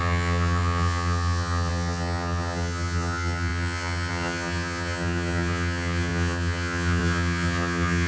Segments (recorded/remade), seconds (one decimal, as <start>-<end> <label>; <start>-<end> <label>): 0.0-8.1 remade